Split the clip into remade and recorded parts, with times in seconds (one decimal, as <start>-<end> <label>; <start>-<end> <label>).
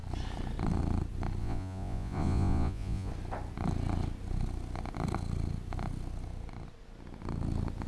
0.0-1.4 recorded; 1.4-3.1 remade; 3.1-7.9 recorded